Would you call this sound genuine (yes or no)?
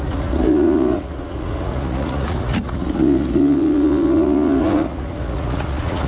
no